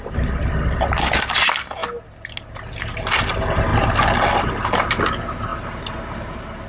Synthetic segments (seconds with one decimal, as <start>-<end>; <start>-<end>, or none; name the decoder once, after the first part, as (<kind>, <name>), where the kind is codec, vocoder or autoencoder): none